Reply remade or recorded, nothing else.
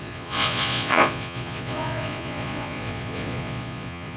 remade